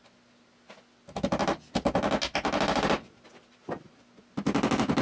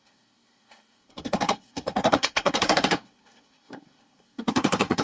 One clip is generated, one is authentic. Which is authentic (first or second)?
first